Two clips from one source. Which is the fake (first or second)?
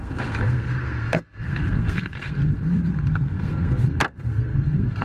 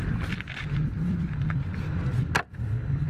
first